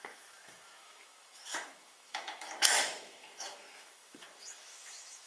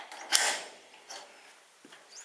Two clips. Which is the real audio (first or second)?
second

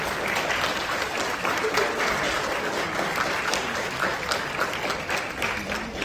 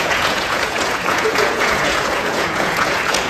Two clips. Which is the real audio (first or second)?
first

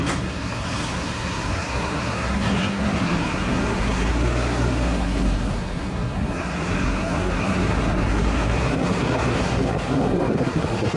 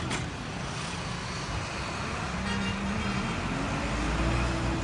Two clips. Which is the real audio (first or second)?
second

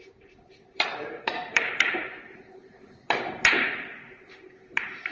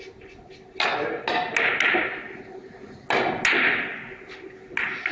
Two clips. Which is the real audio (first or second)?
second